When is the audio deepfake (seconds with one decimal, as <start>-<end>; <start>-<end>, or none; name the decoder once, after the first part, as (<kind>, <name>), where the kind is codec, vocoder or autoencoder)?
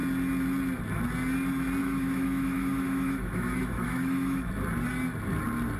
1.8-4.5 (autoencoder, DAC-VAE)